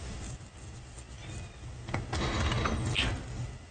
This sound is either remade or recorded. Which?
recorded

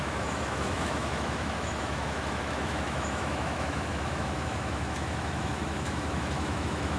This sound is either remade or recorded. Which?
remade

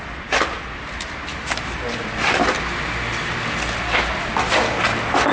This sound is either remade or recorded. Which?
recorded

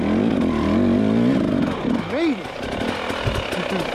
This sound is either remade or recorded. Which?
recorded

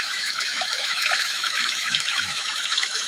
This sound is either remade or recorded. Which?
remade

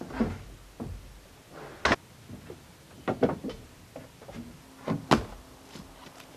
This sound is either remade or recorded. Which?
recorded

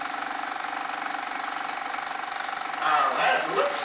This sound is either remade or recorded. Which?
recorded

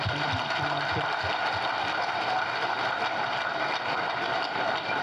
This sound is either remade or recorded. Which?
recorded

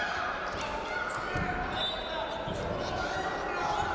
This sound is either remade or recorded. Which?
recorded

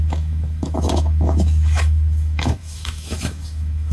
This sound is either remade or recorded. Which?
remade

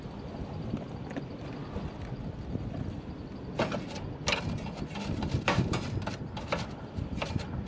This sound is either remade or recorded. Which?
recorded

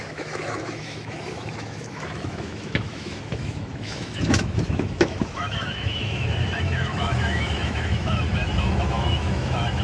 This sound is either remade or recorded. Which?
remade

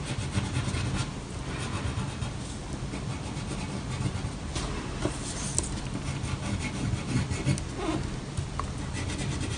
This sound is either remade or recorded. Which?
recorded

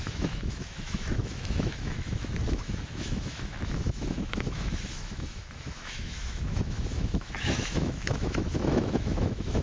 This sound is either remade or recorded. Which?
remade